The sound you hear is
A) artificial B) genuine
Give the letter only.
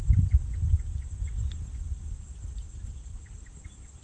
B